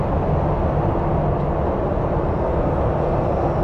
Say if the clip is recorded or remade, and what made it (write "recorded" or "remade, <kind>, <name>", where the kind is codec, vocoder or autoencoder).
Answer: recorded